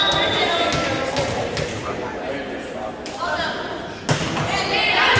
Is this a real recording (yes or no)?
yes